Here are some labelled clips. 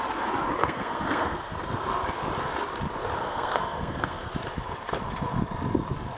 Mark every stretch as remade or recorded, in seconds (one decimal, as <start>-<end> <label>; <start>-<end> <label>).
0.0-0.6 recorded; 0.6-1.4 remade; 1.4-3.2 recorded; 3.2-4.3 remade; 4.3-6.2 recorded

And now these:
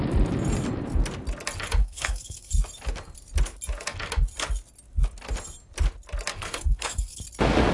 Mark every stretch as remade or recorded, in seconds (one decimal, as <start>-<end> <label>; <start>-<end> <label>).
0.0-1.8 recorded; 1.8-2.5 remade; 2.5-6.3 recorded; 6.3-7.2 remade; 7.2-7.7 recorded

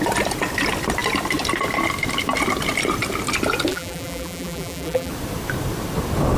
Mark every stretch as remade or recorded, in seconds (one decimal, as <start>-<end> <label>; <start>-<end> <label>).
0.0-3.7 recorded; 3.7-5.1 remade; 5.1-6.4 recorded

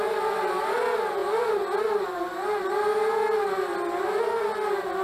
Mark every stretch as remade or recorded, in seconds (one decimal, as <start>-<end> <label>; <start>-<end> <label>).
0.0-5.0 recorded

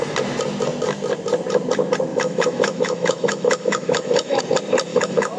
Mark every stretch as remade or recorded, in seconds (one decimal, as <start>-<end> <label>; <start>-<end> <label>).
0.0-2.1 recorded; 2.1-4.4 remade; 4.4-4.9 recorded; 4.9-5.4 remade

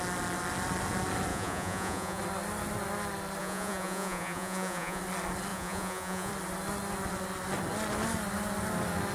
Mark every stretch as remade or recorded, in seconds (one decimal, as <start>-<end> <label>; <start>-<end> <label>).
0.0-1.3 recorded; 1.3-2.2 remade; 2.2-3.4 recorded; 3.4-5.0 remade; 5.0-5.5 recorded; 5.5-6.3 remade; 6.3-9.1 recorded

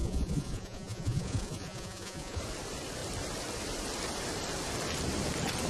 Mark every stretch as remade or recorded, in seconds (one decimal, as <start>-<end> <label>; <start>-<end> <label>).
0.0-2.4 remade; 2.4-5.7 recorded